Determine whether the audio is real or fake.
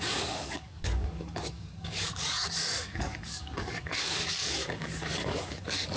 fake